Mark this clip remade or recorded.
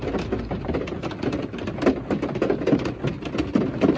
recorded